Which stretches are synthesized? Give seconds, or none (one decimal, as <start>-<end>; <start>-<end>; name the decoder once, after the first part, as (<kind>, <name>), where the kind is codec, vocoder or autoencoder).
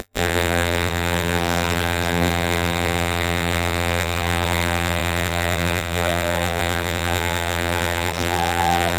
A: 0.0-9.0 (vocoder, BigVGAN v2)